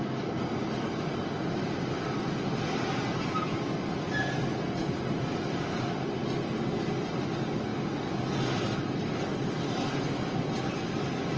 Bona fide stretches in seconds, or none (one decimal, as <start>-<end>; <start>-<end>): 0.0-11.4